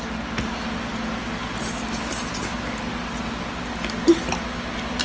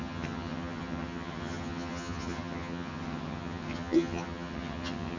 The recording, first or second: first